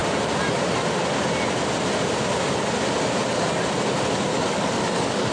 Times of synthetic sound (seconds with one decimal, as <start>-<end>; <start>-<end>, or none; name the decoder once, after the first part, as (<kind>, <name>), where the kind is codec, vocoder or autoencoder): 4.3-5.3 (codec, DAC)